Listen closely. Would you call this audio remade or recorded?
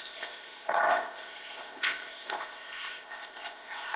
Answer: remade